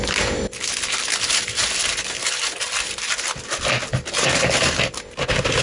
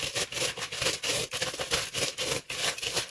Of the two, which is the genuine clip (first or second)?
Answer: first